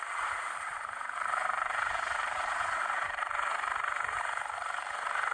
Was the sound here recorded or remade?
remade